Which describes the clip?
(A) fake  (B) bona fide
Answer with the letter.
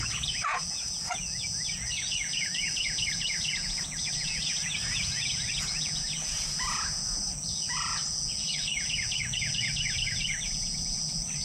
A